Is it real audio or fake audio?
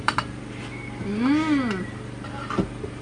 fake